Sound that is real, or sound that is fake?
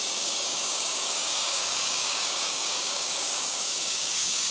fake